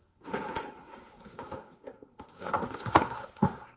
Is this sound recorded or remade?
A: remade